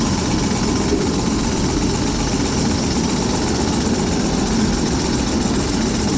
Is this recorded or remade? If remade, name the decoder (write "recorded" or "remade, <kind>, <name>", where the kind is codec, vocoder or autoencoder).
recorded